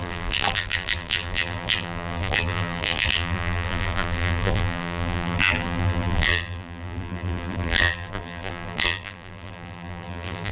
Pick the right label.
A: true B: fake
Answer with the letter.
B